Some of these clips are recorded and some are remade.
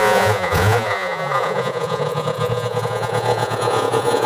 remade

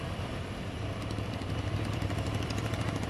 remade